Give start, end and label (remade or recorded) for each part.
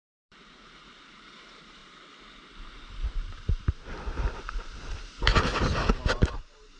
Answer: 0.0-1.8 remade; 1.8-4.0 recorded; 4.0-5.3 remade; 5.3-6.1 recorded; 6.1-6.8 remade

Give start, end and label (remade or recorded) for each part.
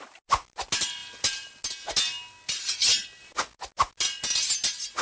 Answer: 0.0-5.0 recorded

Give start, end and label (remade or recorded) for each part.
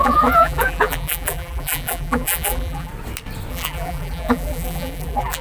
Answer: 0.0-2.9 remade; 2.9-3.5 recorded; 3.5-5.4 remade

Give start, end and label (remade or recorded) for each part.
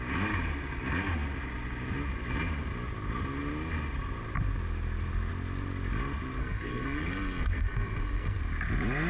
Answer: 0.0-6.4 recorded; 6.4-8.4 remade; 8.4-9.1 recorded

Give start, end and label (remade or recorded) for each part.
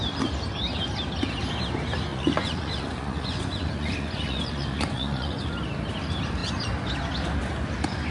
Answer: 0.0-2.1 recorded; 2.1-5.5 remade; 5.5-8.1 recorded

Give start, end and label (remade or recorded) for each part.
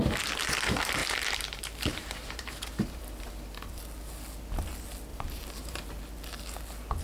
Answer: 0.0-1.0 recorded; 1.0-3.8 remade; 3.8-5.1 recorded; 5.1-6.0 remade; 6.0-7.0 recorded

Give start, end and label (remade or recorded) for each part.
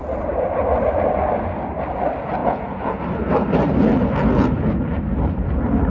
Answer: 0.0-2.4 recorded; 2.4-3.0 remade; 3.0-5.9 recorded